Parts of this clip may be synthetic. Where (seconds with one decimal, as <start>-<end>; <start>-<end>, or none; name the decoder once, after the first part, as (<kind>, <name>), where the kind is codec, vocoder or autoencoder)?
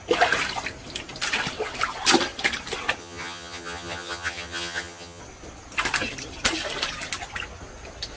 3.0-5.2 (vocoder, HiFi-GAN)